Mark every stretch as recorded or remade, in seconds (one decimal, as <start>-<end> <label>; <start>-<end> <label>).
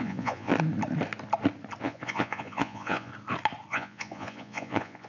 0.0-0.5 remade; 0.5-1.8 recorded; 1.8-3.1 remade; 3.1-3.7 recorded; 3.7-5.1 remade